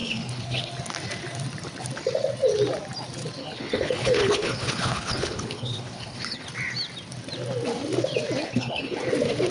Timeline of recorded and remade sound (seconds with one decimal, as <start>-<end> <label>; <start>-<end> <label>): 0.0-0.7 remade; 0.7-3.4 recorded; 3.4-6.5 remade; 6.5-8.4 recorded; 8.4-9.0 remade; 9.0-9.5 recorded